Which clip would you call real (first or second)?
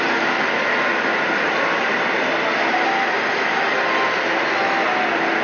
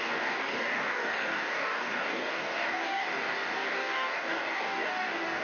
first